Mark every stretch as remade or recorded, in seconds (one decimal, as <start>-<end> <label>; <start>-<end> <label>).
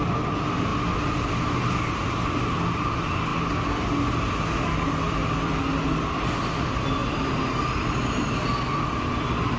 0.0-9.6 recorded